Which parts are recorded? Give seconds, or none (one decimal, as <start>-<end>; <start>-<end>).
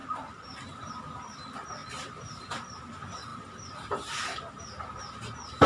0.9-1.8; 2.5-5.7